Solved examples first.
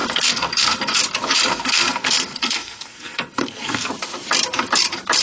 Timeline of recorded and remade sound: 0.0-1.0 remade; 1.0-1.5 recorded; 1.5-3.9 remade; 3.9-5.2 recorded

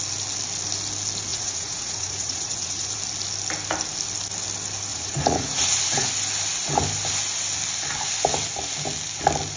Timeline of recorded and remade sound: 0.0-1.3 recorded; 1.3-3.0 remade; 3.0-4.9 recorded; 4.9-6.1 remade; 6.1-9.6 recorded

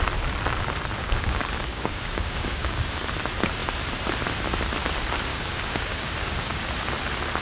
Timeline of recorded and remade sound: 0.0-1.0 recorded; 1.0-3.0 remade; 3.0-5.3 recorded; 5.3-6.6 remade; 6.6-7.4 recorded